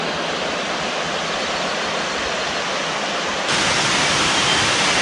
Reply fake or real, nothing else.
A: real